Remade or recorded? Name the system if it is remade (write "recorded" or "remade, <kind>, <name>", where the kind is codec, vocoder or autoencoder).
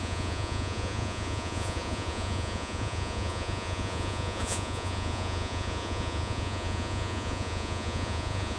remade, vocoder, Vocos